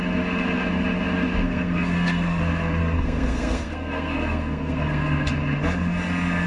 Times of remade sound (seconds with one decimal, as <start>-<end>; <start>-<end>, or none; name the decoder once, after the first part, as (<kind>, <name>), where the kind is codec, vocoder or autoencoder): 1.4-2.4 (codec, SNAC); 2.8-5.3